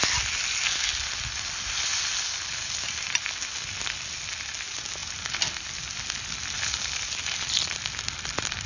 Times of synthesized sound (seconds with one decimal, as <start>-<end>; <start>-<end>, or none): none